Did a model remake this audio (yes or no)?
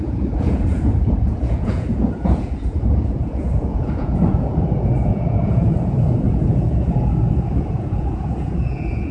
yes